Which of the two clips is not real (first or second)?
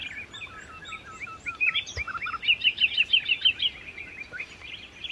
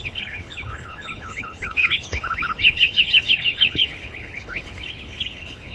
second